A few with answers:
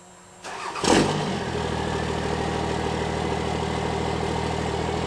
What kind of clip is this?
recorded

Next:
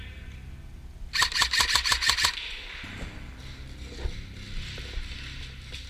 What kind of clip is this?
recorded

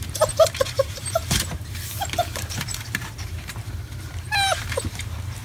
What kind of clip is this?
remade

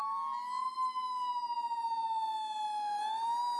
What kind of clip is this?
recorded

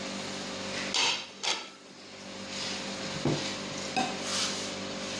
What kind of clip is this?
recorded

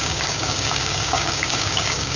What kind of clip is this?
remade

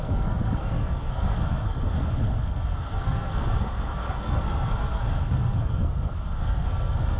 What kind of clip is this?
remade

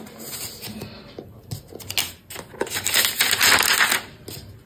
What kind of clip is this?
recorded